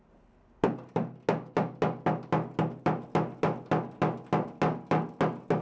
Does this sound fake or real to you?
real